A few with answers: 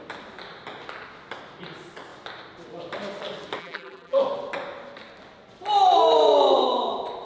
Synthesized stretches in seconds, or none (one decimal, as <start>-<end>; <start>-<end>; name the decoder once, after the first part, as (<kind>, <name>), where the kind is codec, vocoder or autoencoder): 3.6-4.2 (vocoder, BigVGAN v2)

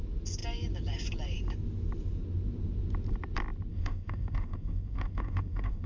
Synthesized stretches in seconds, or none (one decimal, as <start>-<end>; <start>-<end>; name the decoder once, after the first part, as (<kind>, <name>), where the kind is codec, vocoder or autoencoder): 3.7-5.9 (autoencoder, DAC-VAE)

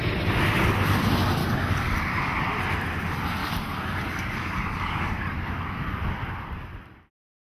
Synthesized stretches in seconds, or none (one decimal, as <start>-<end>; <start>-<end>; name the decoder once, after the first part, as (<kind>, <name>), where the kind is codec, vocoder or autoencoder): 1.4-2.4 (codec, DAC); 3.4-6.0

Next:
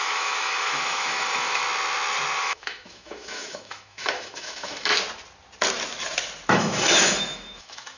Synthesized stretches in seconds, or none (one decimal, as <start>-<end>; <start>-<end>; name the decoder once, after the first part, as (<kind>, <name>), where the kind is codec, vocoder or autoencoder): 0.0-1.6 (autoencoder, DAC-VAE); 2.4-4.9; 6.5-8.0

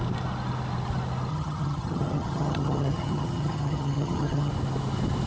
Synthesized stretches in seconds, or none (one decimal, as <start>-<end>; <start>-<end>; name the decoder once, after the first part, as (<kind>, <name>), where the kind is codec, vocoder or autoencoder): 1.3-4.5 (vocoder, HiFi-GAN)

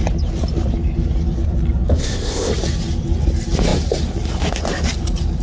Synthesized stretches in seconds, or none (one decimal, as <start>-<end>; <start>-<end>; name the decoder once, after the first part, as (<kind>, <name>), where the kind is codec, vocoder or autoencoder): 1.9-2.5 (codec, ZipCodec)

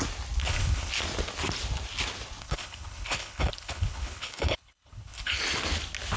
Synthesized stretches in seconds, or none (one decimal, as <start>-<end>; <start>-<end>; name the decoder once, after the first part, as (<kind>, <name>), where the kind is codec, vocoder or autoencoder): 0.4-0.9 (codec, HILCodec); 2.4-5.4

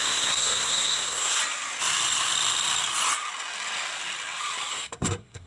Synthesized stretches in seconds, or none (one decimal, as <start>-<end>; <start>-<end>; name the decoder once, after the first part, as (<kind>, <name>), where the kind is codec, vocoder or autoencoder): 0.0-1.4 (codec, SNAC); 4.7-5.5